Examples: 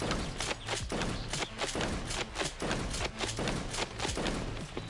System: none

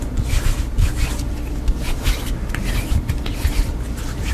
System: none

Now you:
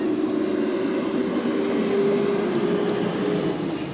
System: none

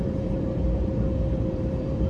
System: vocoder, BigVGAN v2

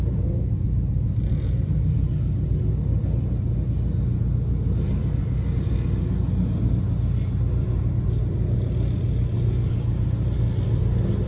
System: none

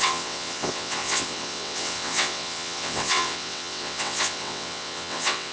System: vocoder, WaveNeXt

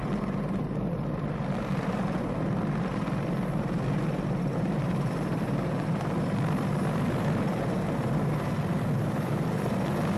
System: none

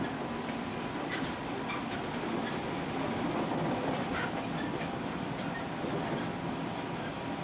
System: vocoder, BigVGAN v2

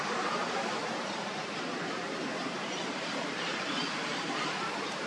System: vocoder, BigVGAN v2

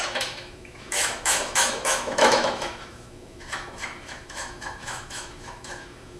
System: autoencoder, DAC-VAE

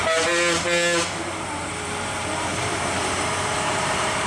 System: vocoder, BigVGAN v2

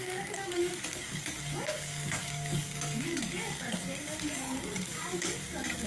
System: codec, DAC